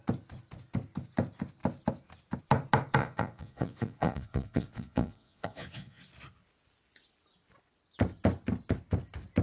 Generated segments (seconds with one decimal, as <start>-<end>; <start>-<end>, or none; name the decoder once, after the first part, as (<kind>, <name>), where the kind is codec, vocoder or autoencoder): 3.0-6.0 (vocoder, Vocos)